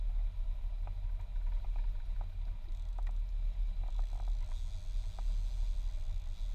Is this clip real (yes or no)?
yes